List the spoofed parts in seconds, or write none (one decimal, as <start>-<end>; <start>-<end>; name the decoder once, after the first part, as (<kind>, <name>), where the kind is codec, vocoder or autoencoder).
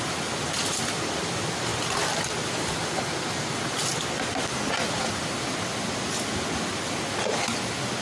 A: none